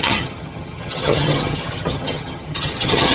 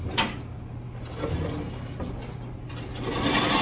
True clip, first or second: second